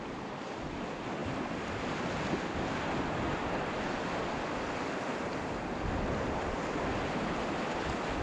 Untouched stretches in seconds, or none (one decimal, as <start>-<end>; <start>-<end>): 0.0-8.2